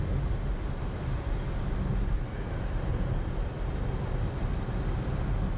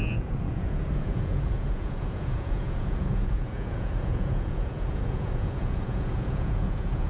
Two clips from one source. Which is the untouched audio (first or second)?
first